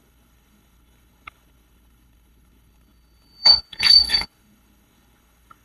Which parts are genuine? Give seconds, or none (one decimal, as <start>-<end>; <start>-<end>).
none